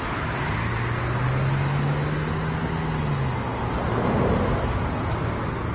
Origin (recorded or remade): recorded